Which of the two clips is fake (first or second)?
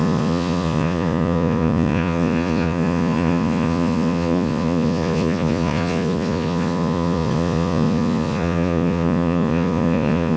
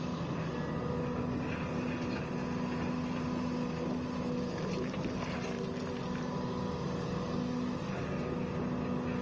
first